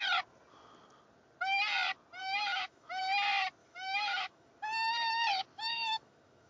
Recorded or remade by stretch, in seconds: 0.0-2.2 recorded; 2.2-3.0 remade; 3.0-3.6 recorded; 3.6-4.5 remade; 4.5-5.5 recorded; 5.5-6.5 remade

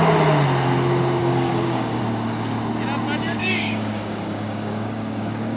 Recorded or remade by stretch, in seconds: 0.0-1.2 recorded; 1.2-2.0 remade; 2.0-3.4 recorded; 3.4-5.6 remade

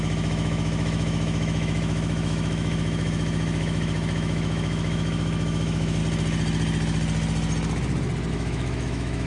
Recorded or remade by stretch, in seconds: 0.0-6.0 remade; 6.0-8.3 recorded; 8.3-9.3 remade

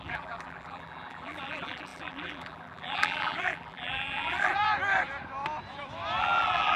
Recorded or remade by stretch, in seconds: 0.0-4.5 remade; 4.5-6.2 recorded; 6.2-6.8 remade